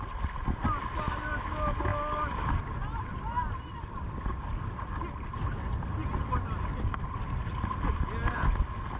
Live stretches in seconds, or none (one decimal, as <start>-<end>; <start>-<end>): 0.0-9.0